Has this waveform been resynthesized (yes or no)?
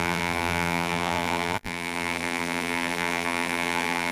yes